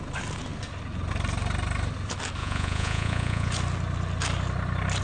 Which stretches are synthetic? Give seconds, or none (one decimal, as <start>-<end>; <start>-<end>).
2.4-3.5